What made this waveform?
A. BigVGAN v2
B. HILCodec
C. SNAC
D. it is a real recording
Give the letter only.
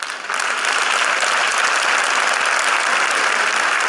D